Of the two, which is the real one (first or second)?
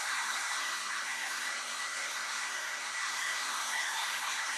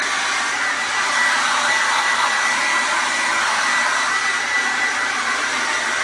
second